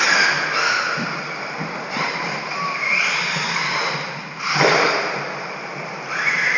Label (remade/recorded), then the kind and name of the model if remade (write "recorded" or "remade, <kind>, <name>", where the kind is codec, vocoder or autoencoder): recorded